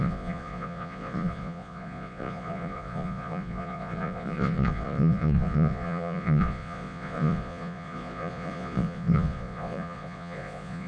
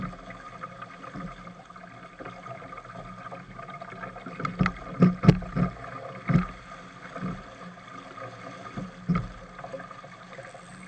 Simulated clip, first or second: first